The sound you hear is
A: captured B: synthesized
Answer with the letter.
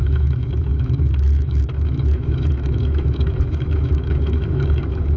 B